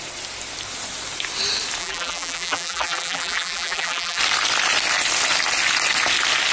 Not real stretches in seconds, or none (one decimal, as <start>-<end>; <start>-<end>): 1.8-4.2